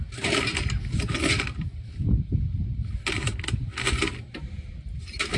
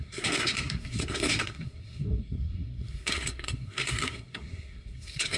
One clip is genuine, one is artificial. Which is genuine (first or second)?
first